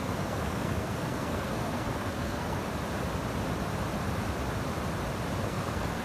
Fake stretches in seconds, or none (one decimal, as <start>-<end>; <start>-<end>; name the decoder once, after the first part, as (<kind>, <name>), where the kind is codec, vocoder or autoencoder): 0.0-2.6 (codec, SNAC); 5.4-6.0